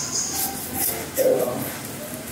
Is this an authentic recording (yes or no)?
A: yes